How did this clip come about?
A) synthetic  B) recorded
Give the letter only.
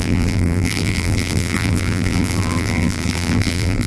A